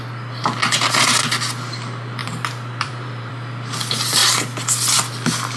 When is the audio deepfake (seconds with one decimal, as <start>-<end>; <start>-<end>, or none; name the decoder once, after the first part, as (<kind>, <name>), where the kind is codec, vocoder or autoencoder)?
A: 2.2-3.3 (vocoder, BigVGAN v2)